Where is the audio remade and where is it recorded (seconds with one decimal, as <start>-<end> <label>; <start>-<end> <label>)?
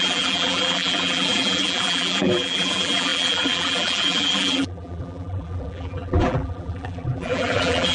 0.0-7.9 remade